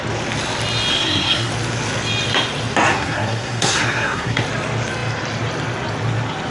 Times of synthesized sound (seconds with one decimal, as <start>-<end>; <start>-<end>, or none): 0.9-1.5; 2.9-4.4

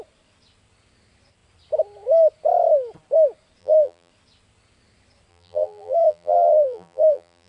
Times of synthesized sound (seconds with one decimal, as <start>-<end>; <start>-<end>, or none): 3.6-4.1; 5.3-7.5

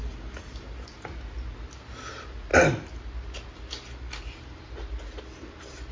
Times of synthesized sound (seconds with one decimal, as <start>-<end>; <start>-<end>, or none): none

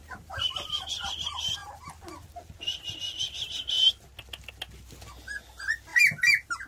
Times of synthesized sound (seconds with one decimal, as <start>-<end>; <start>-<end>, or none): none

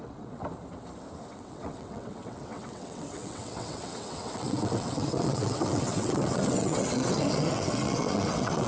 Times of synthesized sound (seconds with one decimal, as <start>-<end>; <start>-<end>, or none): 0.0-0.4; 1.3-8.7